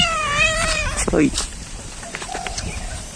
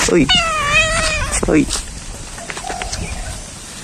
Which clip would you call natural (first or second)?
second